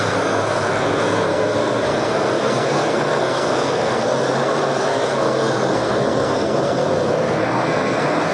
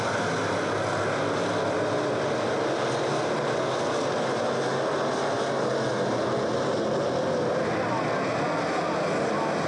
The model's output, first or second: first